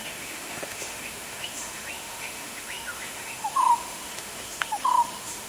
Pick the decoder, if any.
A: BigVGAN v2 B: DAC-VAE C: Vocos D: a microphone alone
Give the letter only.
B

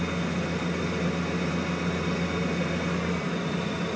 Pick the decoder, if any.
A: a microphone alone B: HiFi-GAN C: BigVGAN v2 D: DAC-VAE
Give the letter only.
A